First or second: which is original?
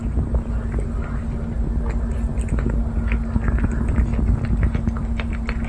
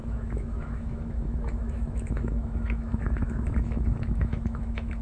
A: first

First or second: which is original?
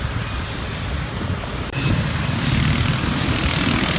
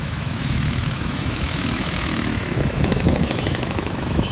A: first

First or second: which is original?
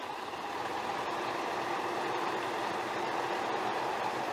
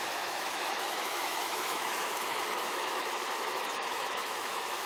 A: first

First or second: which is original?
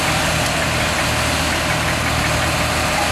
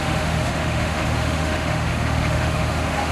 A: first